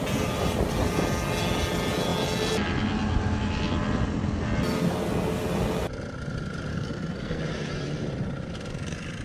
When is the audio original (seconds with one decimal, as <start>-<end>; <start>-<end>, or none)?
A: 0.0-6.7; 7.4-9.2